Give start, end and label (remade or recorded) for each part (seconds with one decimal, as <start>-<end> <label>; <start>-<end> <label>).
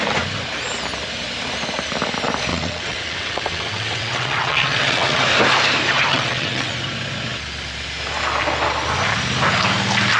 0.0-2.5 recorded; 2.5-5.2 remade; 5.2-6.1 recorded; 6.1-6.7 remade; 6.7-10.2 recorded